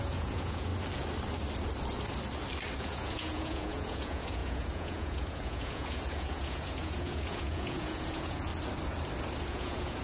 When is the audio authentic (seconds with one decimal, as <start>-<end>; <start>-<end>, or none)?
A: 0.7-2.8; 8.5-9.5